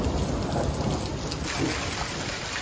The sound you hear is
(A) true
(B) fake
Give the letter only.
A